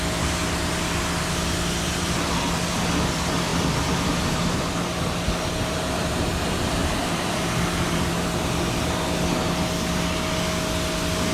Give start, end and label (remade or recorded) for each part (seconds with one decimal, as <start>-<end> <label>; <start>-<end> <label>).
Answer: 0.0-3.5 recorded; 3.5-4.7 remade; 4.7-6.8 recorded; 6.8-8.1 remade; 8.1-11.3 recorded